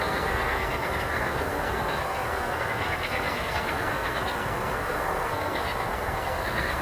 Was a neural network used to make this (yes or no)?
yes